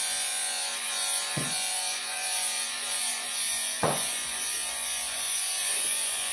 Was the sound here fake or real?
fake